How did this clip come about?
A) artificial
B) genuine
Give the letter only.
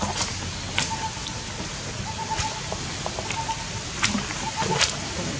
B